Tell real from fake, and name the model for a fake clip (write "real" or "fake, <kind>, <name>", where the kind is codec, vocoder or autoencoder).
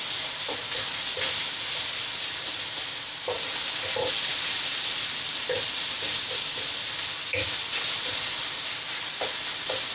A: real